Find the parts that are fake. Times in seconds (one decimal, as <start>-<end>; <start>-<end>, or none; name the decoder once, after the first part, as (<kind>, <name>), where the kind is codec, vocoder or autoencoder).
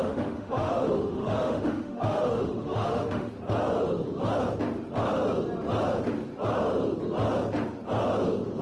0.0-3.3 (autoencoder, DAC-VAE)